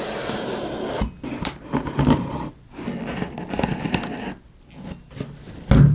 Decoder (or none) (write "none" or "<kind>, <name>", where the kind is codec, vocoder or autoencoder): none